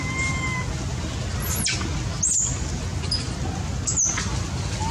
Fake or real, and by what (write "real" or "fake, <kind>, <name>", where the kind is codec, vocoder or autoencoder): real